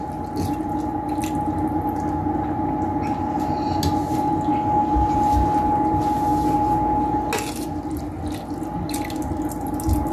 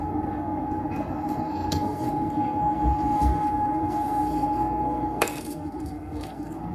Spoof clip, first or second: second